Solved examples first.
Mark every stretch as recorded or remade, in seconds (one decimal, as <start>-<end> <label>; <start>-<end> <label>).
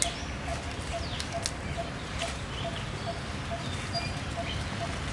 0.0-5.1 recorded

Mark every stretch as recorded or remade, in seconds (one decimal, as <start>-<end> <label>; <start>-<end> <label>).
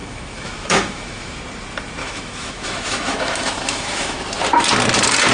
0.0-1.4 remade; 1.4-2.0 recorded; 2.0-4.2 remade; 4.2-5.3 recorded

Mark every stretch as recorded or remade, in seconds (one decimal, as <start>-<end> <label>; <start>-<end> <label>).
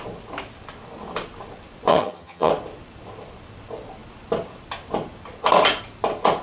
0.0-1.9 recorded; 1.9-2.5 remade; 2.5-6.4 recorded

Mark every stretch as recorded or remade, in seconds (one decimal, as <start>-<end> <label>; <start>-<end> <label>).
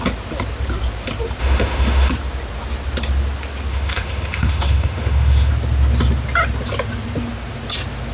0.0-1.4 recorded; 1.4-2.1 remade; 2.1-3.7 recorded; 3.7-5.5 remade; 5.5-8.1 recorded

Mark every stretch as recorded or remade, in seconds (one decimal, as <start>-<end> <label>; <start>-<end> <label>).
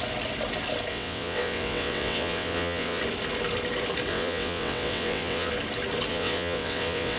0.0-0.9 recorded; 0.9-3.0 remade; 3.0-4.1 recorded; 4.1-5.5 remade; 5.5-6.1 recorded; 6.1-7.2 remade